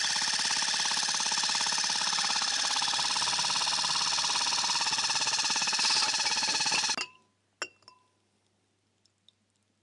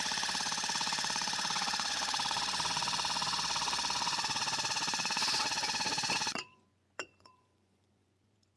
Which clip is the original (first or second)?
first